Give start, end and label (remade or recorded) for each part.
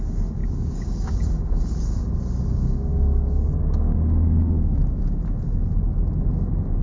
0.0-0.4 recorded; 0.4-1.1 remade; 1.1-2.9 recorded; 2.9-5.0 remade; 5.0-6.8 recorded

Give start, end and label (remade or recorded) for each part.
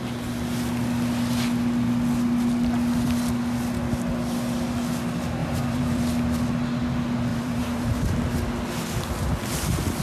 0.0-5.4 recorded; 5.4-6.0 remade; 6.0-7.3 recorded; 7.3-8.1 remade; 8.1-10.0 recorded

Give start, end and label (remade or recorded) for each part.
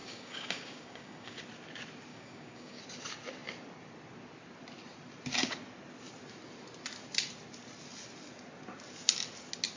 0.0-1.4 remade; 1.4-2.1 recorded; 2.1-2.8 remade; 2.8-9.8 recorded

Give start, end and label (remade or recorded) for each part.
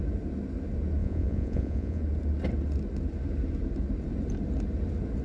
0.0-1.0 recorded; 1.0-2.0 remade; 2.0-5.2 recorded